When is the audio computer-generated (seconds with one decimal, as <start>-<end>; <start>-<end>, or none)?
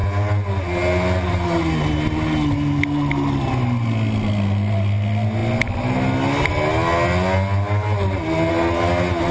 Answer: none